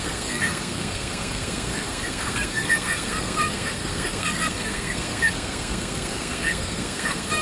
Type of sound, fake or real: fake